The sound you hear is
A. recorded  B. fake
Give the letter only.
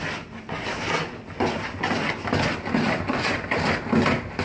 A